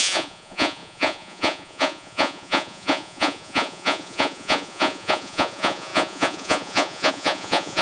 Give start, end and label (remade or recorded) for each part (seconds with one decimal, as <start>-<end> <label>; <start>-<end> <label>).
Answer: 0.0-7.8 remade